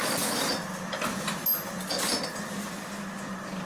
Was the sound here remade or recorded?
recorded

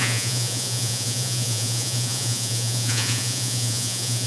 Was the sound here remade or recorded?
remade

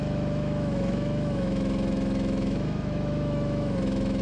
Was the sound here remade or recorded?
remade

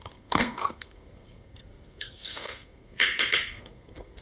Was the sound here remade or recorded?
remade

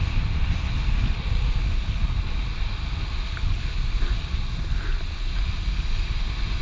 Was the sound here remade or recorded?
recorded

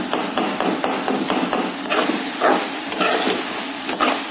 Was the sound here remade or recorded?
recorded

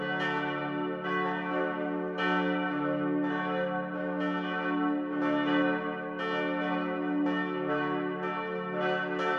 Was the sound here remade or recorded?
recorded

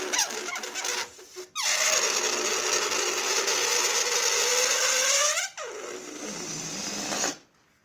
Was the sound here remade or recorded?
recorded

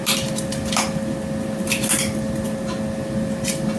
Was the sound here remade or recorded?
recorded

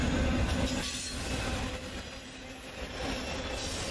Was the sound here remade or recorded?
recorded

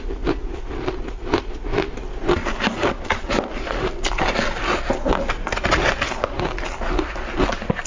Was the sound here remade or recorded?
recorded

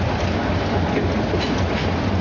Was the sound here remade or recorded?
recorded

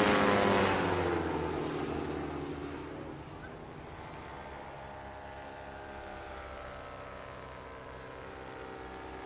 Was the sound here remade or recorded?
recorded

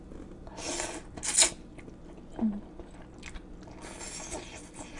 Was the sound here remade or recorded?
recorded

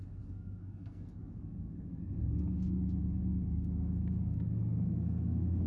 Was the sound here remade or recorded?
remade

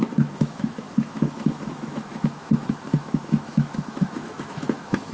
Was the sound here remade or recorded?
remade